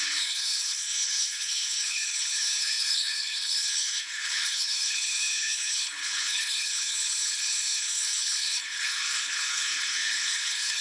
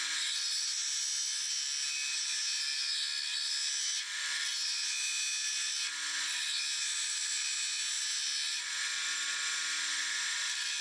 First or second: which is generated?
first